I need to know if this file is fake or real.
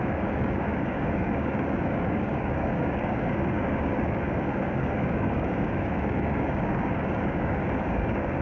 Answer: fake